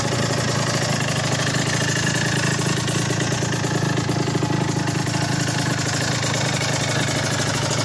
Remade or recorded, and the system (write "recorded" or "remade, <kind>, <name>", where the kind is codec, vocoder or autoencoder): recorded